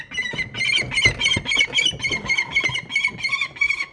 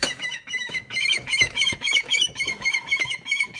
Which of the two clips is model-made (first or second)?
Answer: second